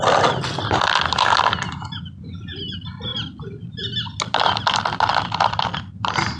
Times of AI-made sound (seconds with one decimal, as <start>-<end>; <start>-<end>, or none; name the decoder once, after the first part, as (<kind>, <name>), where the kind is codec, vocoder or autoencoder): none